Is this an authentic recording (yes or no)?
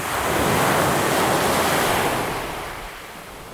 yes